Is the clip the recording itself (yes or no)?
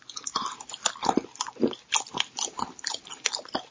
yes